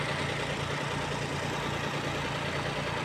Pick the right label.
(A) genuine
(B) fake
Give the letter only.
A